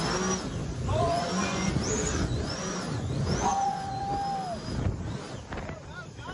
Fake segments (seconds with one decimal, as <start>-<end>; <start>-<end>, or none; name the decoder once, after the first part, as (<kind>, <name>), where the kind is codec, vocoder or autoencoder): 0.6-1.7 (vocoder, Vocos); 2.1-4.0